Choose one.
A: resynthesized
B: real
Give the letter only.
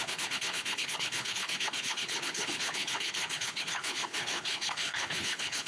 A